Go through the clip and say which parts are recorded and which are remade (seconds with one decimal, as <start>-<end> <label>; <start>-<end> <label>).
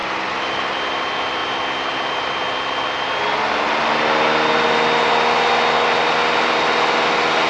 0.0-7.5 recorded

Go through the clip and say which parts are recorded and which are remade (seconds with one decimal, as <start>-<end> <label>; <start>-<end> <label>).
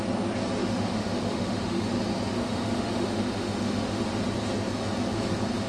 0.0-0.6 recorded; 0.6-1.9 remade; 1.9-2.4 recorded; 2.4-4.0 remade; 4.0-5.7 recorded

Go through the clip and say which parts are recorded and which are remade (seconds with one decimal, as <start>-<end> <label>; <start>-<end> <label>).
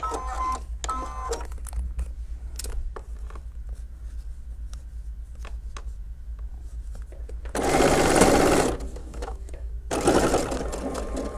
0.0-9.0 recorded; 9.0-9.7 remade; 9.7-11.4 recorded